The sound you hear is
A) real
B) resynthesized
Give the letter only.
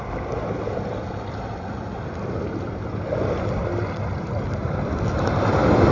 A